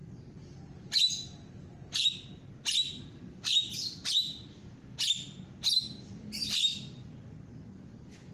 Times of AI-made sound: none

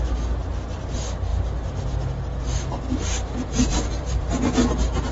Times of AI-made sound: 3.7-4.3 (vocoder, BigVGAN v2)

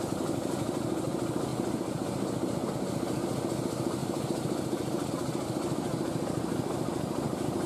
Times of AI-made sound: 4.0-5.1 (vocoder, BigVGAN v2)